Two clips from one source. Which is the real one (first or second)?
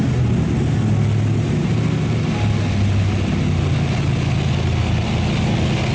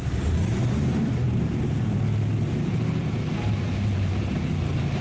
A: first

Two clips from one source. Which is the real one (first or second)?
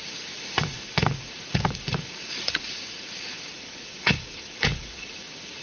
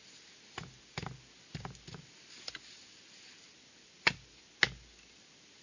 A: second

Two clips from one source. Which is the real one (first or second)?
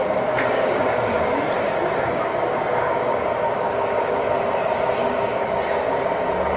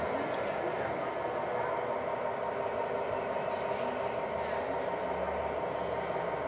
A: second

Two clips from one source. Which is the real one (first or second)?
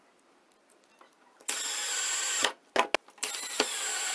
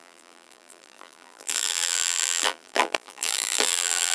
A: first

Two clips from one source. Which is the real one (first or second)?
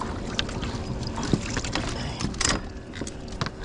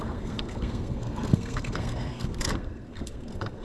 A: first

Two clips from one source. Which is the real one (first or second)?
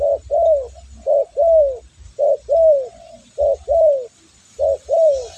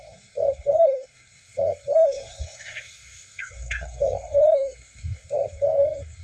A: first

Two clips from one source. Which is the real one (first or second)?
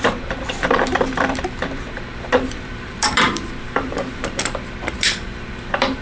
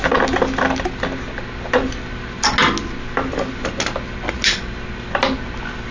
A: second